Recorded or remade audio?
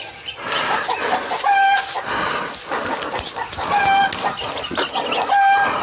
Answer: recorded